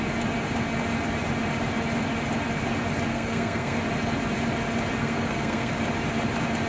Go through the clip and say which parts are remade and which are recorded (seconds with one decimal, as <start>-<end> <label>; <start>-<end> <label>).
0.0-3.1 recorded; 3.1-3.8 remade; 3.8-5.0 recorded; 5.0-5.7 remade; 5.7-6.7 recorded